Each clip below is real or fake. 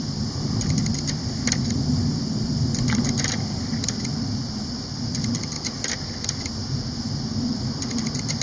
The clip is real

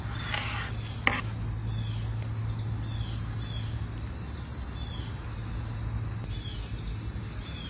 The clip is real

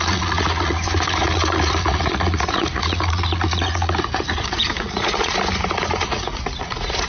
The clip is fake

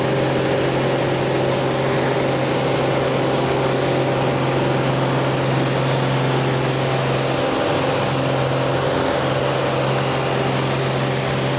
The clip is real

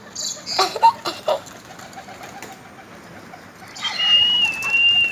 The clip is real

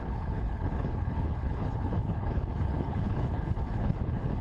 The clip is fake